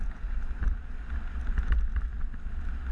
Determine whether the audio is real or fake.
real